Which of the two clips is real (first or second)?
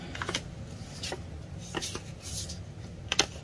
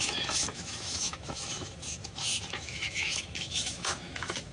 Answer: first